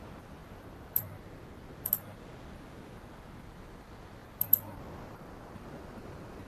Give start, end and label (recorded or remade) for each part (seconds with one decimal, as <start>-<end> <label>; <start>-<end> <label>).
0.0-0.4 recorded; 0.4-1.9 remade; 1.9-4.2 recorded; 4.2-5.3 remade; 5.3-6.5 recorded